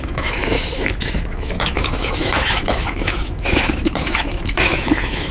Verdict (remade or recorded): remade